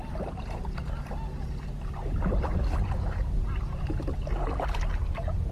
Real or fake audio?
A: real